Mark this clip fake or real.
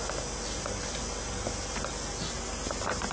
real